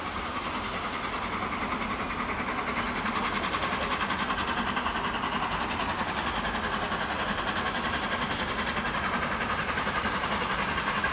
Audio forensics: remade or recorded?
recorded